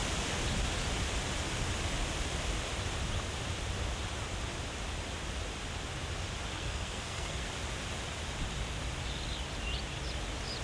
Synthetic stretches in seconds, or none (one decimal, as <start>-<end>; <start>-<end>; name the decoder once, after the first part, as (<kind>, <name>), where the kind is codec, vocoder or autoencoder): 6.5-7.5 (codec, SNAC)